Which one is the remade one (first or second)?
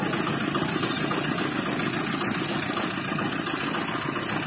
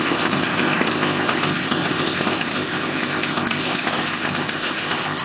second